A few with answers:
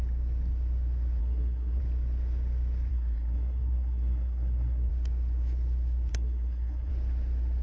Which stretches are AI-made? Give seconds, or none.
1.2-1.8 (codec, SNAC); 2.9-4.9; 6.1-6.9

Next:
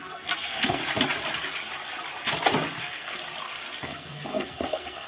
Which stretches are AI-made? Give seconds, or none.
0.0-0.8 (codec, SNAC); 2.8-3.2; 3.8-5.1

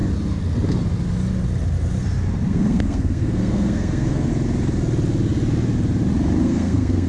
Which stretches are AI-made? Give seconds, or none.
2.5-4.3 (codec, SNAC); 6.4-7.1